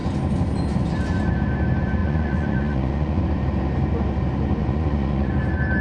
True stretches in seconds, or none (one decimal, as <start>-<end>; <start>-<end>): 0.0-2.0; 3.2-4.6; 5.3-5.8